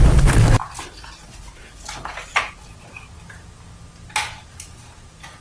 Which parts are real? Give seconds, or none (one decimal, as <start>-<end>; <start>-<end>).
0.0-5.4